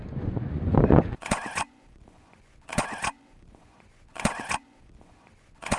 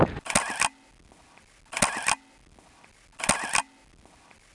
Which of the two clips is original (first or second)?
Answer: second